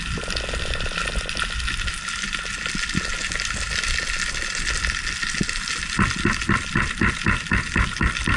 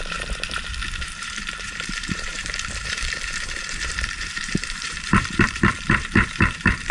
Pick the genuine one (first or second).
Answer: first